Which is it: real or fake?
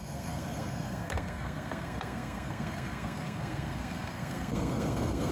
fake